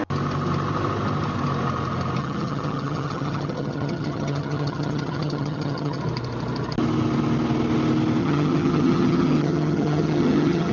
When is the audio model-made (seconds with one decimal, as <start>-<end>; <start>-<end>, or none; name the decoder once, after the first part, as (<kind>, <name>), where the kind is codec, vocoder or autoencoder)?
2.2-6.0 (vocoder, HiFi-GAN); 8.2-10.7